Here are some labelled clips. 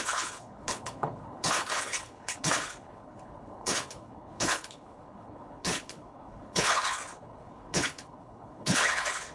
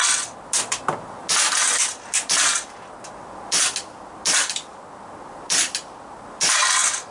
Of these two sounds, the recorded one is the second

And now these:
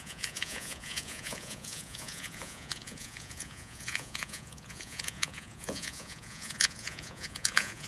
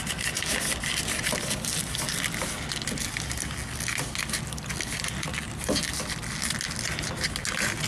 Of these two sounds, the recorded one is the second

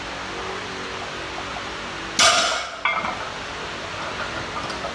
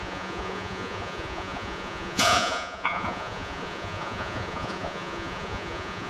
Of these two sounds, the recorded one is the first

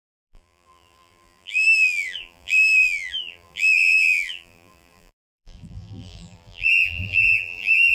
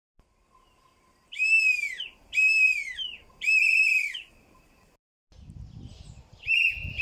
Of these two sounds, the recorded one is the second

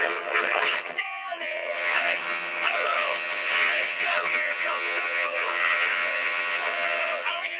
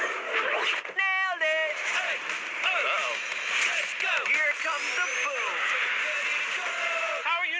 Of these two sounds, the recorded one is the second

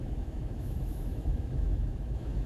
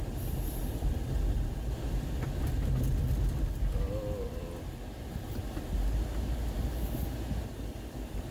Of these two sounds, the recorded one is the second